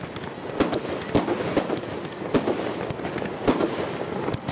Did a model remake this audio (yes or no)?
no